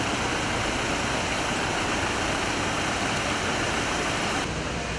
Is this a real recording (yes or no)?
yes